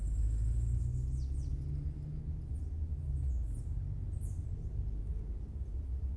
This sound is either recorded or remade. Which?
recorded